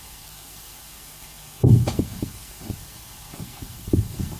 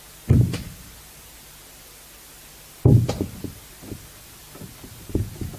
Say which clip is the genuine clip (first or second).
second